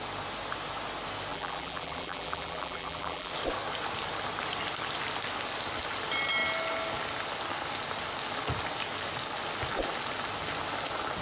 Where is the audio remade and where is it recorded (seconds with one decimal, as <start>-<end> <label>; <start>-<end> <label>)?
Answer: 0.0-1.3 recorded; 1.3-3.3 remade; 3.3-11.2 recorded